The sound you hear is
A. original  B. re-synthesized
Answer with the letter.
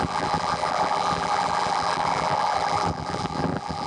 B